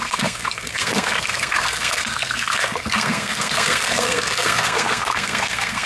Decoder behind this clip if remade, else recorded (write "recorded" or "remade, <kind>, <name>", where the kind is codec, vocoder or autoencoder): remade, codec, SNAC